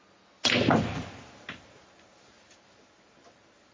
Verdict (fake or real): real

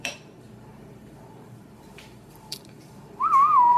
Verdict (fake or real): fake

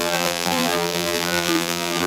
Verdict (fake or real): fake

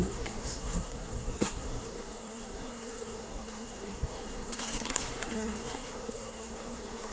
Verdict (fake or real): fake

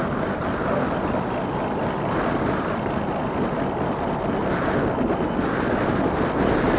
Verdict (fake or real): real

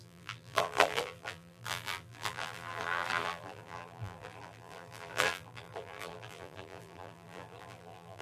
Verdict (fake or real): fake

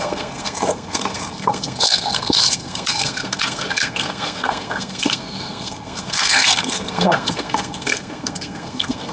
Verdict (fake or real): fake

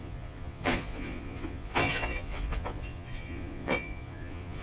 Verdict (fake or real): fake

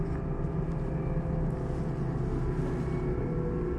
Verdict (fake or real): real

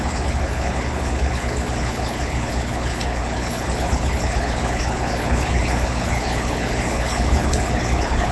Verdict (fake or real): fake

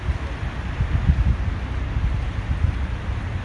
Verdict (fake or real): real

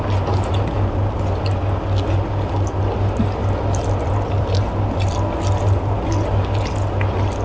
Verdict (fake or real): real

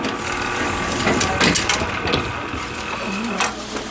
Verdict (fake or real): real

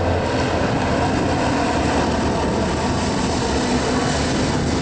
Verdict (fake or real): real